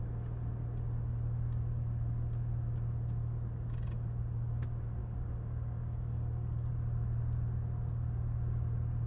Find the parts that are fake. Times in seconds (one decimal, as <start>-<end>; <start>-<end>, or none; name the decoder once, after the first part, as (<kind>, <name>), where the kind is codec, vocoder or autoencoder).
5.0-6.7 (codec, DAC)

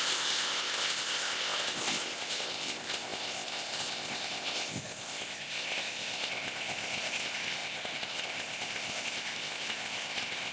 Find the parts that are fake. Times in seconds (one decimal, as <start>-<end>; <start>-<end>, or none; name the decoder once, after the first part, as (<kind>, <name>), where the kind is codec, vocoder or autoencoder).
0.0-10.5 (codec, ZipCodec)